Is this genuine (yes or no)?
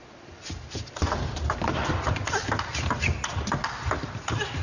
no